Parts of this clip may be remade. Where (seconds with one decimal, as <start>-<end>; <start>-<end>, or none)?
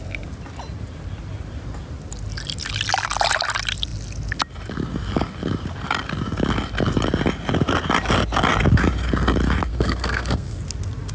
9.7-10.6